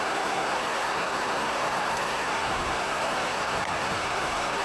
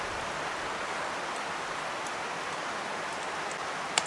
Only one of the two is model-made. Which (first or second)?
first